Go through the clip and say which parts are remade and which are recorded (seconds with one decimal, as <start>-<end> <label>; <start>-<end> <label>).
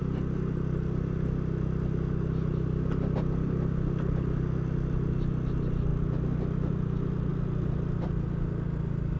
0.0-9.2 recorded